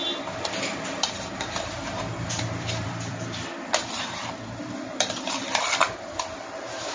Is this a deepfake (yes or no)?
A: yes